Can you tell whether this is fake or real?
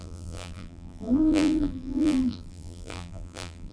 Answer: fake